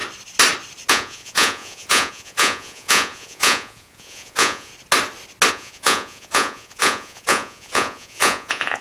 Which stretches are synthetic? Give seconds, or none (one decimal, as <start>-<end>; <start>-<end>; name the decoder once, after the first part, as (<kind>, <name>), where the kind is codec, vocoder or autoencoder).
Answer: 0.9-4.7 (vocoder, Vocos); 5.5-8.8